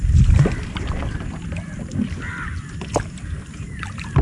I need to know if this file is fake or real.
real